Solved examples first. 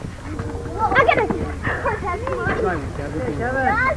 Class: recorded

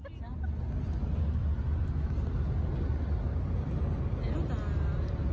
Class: recorded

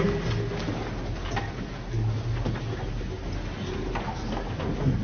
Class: recorded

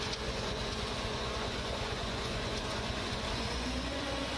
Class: remade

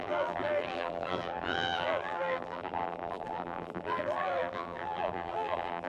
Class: remade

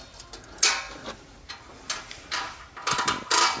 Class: recorded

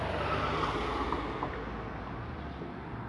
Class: recorded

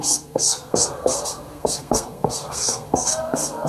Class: remade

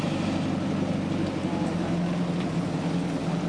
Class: recorded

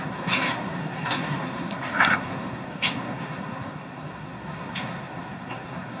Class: remade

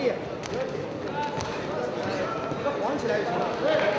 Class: recorded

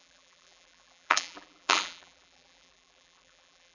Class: remade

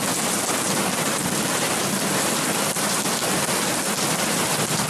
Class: recorded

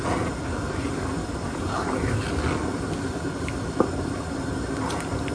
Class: recorded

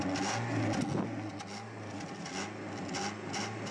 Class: recorded